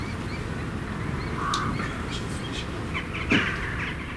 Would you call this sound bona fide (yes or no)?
yes